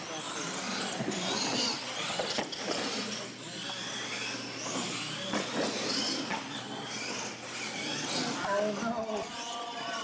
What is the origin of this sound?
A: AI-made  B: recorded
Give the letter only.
B